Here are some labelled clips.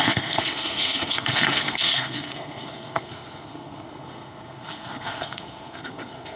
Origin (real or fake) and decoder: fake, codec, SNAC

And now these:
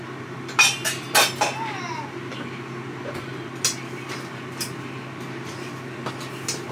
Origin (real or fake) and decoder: real